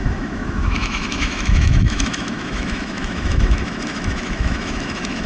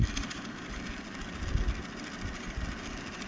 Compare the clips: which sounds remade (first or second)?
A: first